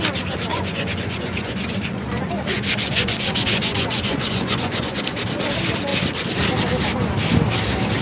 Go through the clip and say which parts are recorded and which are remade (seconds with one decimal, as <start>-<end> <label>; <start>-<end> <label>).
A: 0.0-0.5 recorded; 0.5-5.0 remade; 5.0-8.0 recorded